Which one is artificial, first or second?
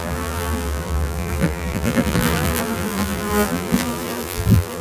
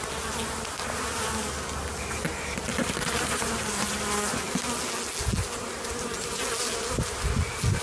first